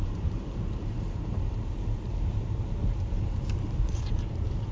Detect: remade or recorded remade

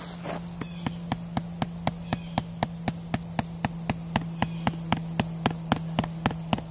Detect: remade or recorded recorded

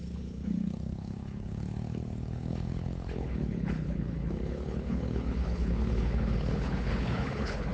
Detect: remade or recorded remade